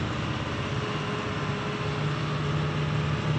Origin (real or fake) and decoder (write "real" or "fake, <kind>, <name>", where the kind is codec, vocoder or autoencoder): real